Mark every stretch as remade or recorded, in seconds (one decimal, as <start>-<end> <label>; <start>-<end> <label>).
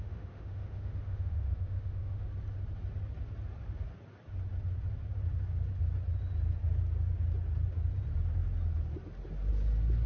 0.0-2.3 remade; 2.3-10.1 recorded